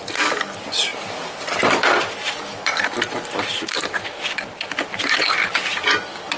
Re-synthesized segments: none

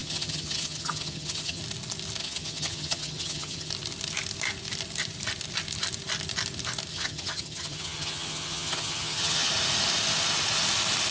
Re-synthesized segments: 0.0-1.6 (vocoder, HiFi-GAN); 2.2-3.7; 6.9-9.5

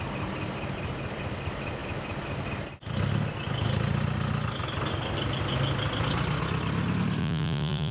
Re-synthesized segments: 7.2-7.9 (vocoder, Vocos)